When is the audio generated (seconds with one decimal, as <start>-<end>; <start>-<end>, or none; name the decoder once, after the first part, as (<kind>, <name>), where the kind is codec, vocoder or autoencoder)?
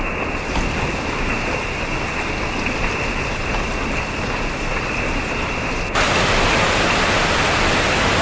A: none